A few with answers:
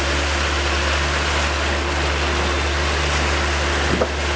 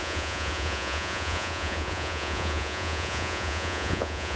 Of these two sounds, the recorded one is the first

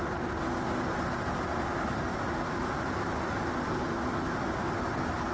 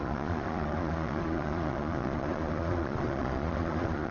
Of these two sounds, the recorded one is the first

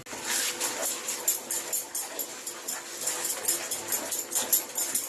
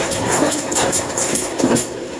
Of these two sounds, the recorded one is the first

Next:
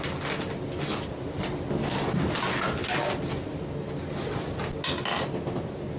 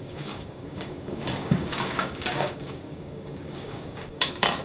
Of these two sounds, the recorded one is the first